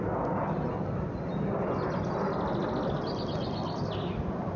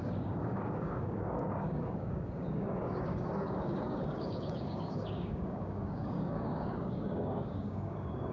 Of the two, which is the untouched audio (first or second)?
first